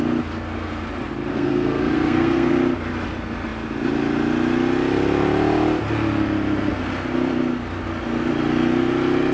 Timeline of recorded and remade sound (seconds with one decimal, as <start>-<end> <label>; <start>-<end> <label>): 0.0-1.3 recorded; 1.3-2.5 remade; 2.5-9.3 recorded